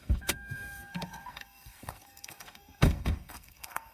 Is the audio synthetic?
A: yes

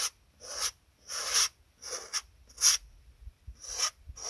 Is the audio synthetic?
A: no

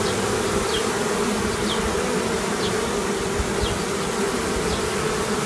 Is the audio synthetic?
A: no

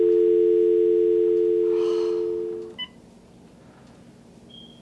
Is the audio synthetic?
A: no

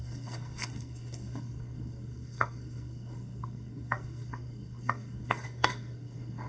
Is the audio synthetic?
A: yes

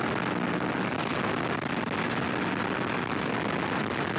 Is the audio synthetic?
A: no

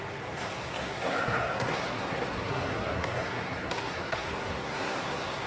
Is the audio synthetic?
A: yes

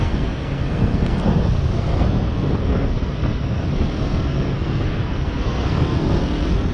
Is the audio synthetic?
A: yes